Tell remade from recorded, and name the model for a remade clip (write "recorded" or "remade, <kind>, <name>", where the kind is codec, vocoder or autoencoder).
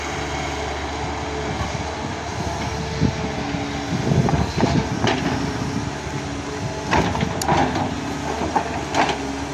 recorded